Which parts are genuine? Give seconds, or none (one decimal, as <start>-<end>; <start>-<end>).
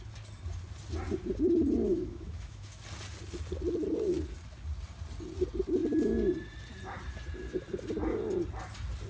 0.0-1.9; 2.8-9.1